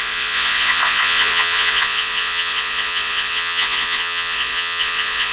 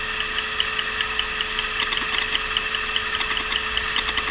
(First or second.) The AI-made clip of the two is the first